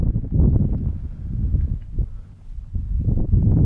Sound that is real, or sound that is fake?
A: fake